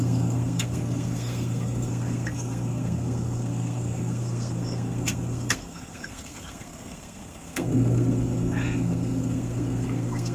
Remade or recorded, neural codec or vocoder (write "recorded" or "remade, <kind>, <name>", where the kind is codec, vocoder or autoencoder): remade, codec, SNAC